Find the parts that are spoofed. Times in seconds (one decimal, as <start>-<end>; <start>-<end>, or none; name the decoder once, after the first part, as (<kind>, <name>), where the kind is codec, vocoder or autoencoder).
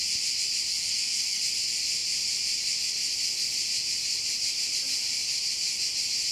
0.7-1.4 (codec, SNAC)